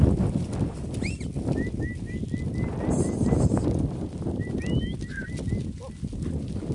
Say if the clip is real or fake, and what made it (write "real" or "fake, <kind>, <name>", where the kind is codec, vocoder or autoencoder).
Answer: real